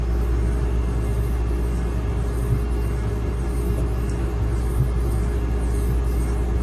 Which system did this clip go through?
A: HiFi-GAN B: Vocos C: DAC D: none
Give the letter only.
D